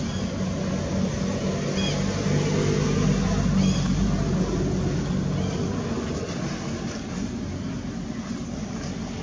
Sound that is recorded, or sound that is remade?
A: recorded